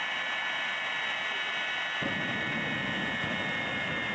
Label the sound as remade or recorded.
recorded